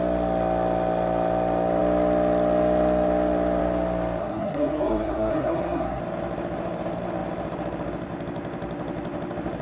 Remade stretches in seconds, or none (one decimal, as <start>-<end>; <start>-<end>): 4.2-6.0